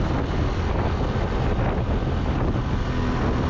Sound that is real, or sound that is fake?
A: real